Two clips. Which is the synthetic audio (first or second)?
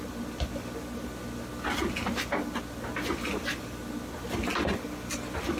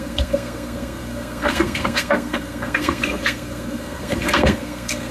second